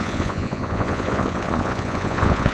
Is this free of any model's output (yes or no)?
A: no